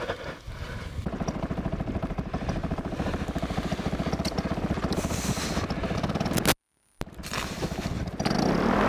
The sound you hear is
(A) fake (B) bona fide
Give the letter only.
B